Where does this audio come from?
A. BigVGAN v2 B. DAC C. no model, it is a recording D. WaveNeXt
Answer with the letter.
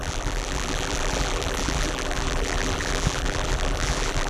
A